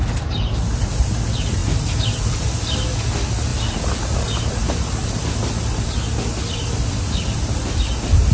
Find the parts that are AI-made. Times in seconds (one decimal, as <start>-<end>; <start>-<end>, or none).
none